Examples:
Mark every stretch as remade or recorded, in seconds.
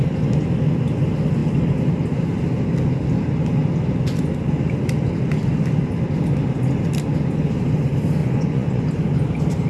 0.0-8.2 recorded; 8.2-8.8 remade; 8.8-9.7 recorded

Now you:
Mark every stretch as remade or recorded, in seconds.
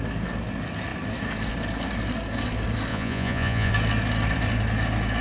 0.0-2.9 recorded; 2.9-3.7 remade; 3.7-5.2 recorded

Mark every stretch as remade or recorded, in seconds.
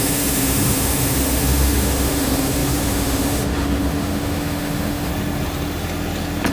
0.0-5.1 remade; 5.1-6.5 recorded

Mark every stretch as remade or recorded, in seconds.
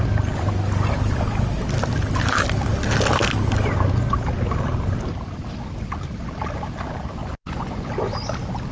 0.0-7.2 recorded; 7.2-7.9 remade; 7.9-8.7 recorded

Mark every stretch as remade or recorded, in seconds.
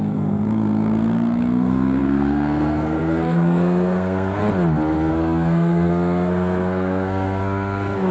0.0-4.4 remade; 4.4-5.1 recorded; 5.1-8.1 remade